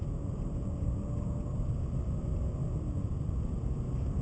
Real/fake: real